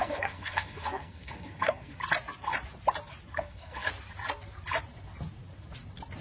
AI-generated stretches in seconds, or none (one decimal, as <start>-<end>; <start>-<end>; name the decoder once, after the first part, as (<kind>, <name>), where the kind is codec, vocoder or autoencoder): 0.0-2.0 (codec, SNAC); 3.3-3.9